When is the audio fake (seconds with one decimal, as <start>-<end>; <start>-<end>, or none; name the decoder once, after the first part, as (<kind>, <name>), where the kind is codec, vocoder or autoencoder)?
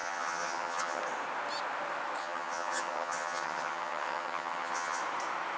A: 0.0-1.0 (vocoder, HiFi-GAN); 2.2-5.0